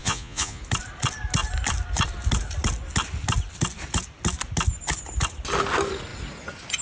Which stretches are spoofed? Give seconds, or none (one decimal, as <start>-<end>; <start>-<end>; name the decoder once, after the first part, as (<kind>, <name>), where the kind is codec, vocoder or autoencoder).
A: 0.0-0.6 (vocoder, Vocos)